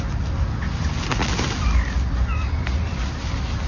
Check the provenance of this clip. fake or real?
real